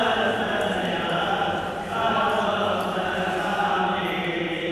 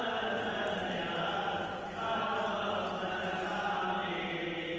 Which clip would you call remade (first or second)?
first